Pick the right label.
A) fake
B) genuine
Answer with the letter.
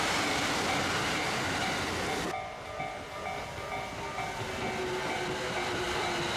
B